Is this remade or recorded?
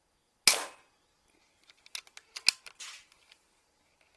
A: recorded